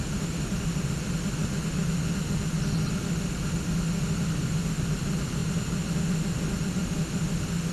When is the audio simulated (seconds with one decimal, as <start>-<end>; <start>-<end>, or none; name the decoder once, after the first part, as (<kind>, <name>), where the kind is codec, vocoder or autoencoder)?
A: 1.4-2.9 (vocoder, BigVGAN v2)